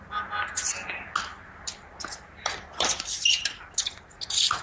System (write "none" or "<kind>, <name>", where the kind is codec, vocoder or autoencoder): none